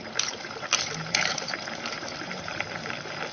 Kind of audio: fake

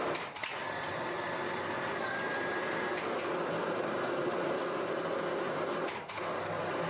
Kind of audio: real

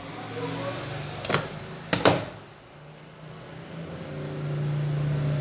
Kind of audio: real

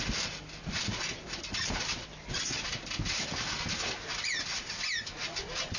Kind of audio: real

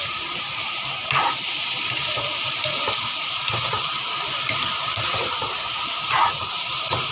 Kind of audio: fake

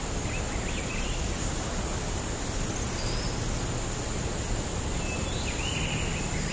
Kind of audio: real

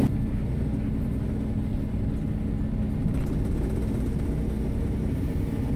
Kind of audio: real